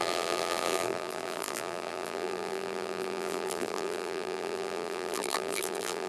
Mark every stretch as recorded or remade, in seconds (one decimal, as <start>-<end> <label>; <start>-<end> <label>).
0.0-6.1 remade